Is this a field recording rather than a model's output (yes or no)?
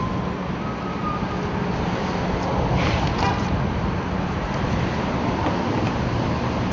yes